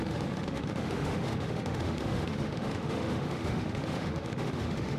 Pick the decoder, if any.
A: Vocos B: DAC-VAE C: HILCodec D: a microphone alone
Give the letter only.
B